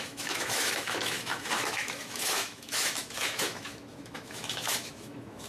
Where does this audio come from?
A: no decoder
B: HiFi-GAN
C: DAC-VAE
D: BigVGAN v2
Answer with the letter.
C